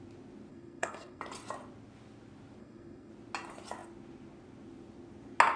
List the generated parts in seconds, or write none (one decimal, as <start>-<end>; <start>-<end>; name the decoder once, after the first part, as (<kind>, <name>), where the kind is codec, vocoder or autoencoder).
0.5-1.2 (codec, SNAC); 2.6-3.1